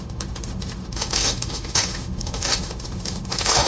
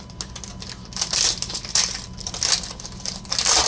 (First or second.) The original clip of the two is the second